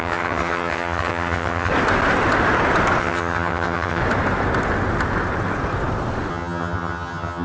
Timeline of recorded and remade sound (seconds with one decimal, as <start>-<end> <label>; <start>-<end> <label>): 0.0-1.7 remade; 1.7-3.0 recorded; 3.0-4.0 remade; 4.0-6.3 recorded; 6.3-7.4 remade